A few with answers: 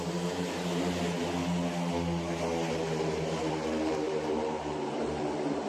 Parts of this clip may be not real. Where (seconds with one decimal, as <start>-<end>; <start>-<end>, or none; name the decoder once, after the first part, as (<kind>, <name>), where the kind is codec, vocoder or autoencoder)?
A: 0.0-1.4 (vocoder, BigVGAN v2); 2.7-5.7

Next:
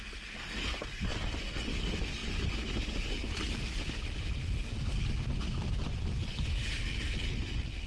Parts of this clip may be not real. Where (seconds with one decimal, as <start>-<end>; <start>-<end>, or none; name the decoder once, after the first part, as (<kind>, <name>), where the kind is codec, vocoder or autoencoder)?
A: none

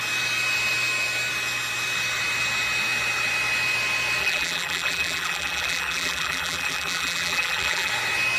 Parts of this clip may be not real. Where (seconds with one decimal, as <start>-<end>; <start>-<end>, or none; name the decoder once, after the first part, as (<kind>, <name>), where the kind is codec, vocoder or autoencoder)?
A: 4.2-7.9 (vocoder, BigVGAN v2)